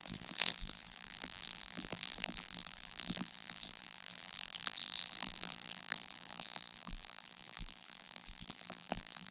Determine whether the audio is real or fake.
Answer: fake